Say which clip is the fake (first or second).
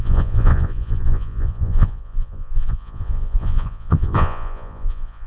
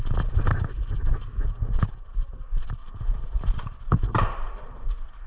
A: first